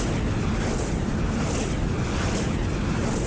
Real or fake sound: real